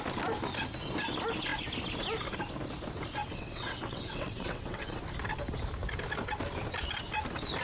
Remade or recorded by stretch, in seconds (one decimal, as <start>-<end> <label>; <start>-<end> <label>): 0.0-3.2 recorded; 3.2-5.0 remade; 5.0-7.6 recorded